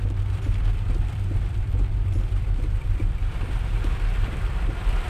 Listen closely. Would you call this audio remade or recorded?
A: remade